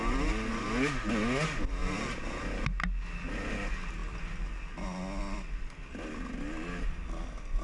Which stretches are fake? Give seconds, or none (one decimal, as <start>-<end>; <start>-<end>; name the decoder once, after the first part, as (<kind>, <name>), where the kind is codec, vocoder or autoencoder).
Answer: none